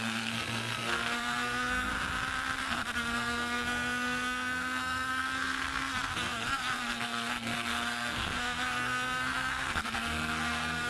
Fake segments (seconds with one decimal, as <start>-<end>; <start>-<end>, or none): 0.0-1.9; 2.6-10.9